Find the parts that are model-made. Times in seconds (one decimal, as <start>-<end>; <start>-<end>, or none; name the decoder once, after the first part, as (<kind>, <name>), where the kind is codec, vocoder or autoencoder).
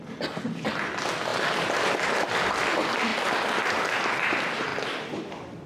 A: 1.3-1.9 (vocoder, BigVGAN v2)